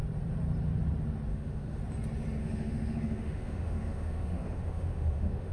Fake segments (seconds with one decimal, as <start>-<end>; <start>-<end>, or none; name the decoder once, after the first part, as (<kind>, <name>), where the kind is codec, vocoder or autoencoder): 1.3-1.8 (autoencoder, DAC-VAE); 2.4-5.5